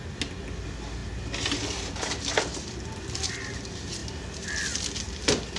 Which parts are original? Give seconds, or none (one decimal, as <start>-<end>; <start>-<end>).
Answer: 0.0-5.6